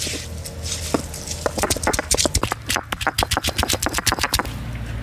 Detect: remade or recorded recorded